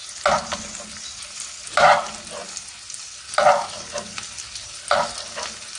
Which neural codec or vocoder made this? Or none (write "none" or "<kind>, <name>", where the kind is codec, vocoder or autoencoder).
none